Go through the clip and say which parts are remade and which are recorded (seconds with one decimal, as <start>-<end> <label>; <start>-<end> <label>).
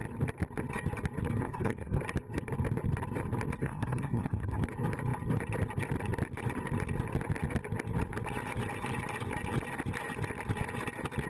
0.0-1.4 recorded; 1.4-2.0 remade; 2.0-3.6 recorded; 3.6-4.6 remade; 4.6-11.3 recorded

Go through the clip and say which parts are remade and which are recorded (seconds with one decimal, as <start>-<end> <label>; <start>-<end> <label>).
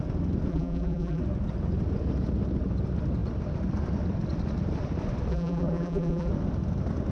0.0-0.5 recorded; 0.5-1.2 remade; 1.2-5.3 recorded; 5.3-6.3 remade; 6.3-7.1 recorded